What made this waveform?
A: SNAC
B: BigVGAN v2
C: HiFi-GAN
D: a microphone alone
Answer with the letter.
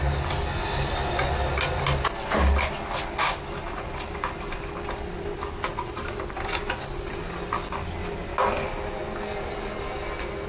D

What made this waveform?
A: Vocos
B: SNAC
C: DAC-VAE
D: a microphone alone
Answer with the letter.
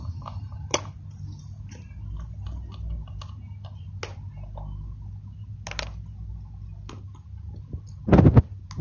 D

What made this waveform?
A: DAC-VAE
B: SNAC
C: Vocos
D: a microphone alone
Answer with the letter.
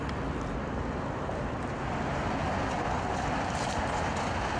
D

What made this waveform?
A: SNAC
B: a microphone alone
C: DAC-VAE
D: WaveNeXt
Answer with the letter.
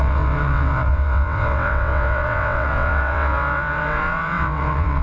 D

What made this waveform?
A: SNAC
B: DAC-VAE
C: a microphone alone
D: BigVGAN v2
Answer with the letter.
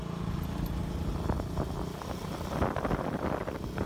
C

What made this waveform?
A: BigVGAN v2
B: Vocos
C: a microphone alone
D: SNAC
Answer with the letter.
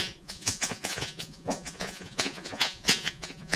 B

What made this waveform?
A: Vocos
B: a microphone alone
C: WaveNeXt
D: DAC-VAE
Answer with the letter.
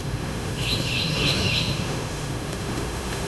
D